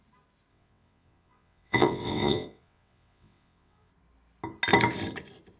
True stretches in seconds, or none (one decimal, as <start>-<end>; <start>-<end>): 0.0-0.5; 3.9-5.6